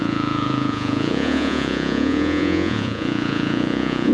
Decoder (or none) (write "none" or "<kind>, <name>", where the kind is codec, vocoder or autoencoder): vocoder, Vocos